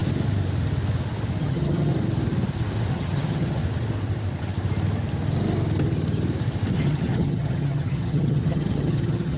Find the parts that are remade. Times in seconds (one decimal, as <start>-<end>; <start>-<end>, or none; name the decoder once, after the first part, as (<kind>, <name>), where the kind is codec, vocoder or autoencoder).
1.4-1.9 (vocoder, HiFi-GAN); 2.9-3.6; 6.8-9.4